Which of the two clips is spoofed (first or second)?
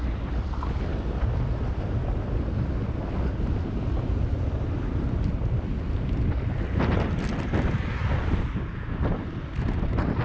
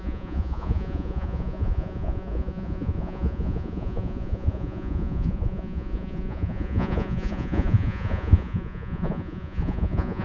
second